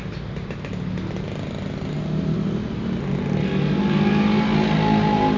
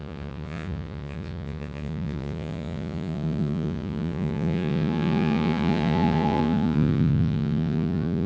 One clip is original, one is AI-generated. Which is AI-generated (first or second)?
second